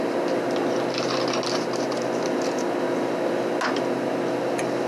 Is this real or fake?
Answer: real